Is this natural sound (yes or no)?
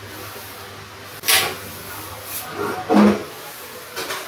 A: yes